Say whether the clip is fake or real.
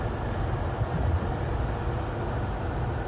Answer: real